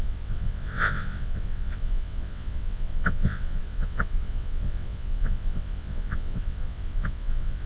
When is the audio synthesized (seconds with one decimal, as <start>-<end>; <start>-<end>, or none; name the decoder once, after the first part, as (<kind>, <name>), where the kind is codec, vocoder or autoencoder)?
0.0-7.7 (vocoder, WaveNeXt)

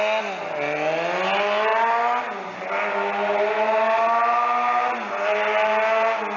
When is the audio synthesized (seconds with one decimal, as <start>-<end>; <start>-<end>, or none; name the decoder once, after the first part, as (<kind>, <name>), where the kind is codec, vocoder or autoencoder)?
none